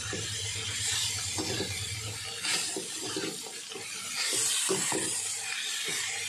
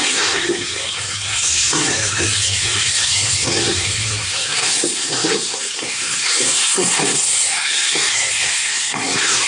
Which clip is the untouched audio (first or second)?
first